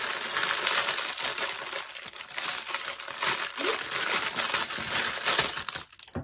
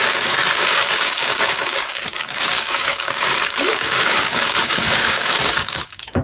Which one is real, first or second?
first